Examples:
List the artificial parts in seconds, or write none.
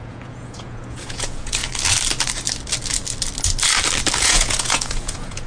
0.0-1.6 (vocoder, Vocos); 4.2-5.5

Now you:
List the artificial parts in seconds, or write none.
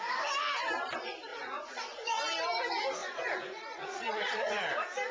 1.3-2.2 (vocoder, Vocos); 3.0-4.5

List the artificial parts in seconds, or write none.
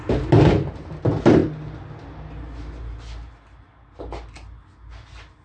none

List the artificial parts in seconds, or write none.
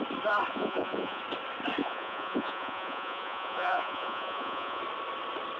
0.5-1.2 (vocoder, Vocos); 1.8-4.8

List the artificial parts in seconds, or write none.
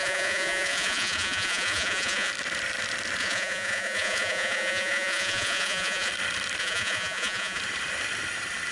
0.0-2.3 (vocoder, Vocos); 3.2-6.1; 6.6-7.6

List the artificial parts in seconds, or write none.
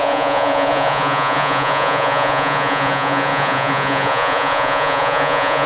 0.0-5.7 (vocoder, Vocos)